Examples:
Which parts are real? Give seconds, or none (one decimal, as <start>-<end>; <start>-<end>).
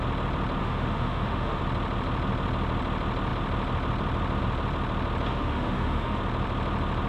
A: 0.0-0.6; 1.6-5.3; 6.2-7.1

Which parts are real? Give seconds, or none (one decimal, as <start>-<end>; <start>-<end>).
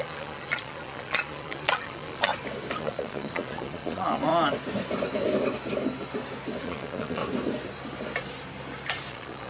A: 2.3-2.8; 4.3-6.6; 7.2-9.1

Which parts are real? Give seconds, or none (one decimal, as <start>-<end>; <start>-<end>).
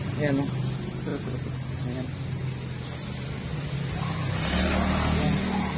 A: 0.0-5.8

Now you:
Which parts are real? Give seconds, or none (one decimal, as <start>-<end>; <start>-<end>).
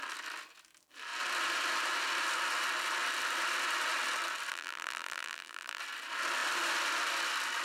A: 0.0-4.5; 5.8-7.6